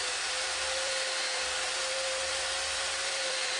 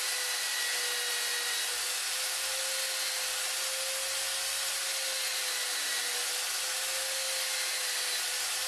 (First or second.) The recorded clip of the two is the second